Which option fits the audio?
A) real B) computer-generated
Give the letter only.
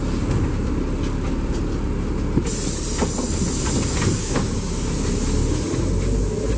A